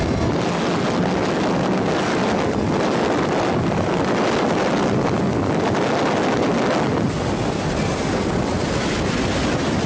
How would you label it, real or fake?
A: real